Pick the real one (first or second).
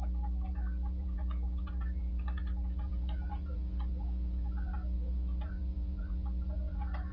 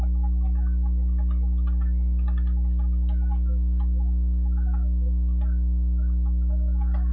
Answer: second